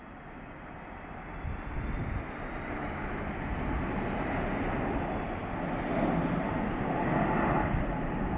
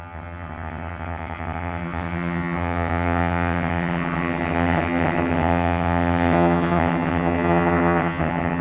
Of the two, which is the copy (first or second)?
second